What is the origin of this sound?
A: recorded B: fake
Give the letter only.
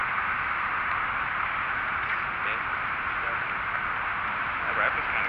A